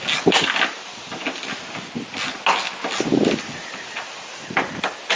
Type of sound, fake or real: real